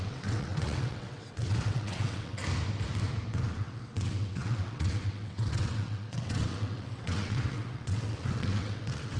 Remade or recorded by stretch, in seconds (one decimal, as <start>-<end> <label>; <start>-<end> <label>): 0.0-2.4 remade; 2.4-3.3 recorded; 3.3-9.2 remade